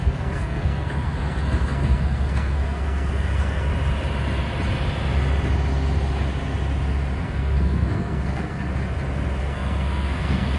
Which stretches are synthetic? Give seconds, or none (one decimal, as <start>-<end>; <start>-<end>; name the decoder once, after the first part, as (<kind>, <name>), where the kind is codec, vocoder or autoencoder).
0.0-3.7 (codec, SNAC); 7.2-8.7; 9.4-10.6